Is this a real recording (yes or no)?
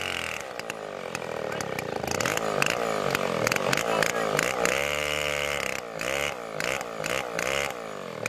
yes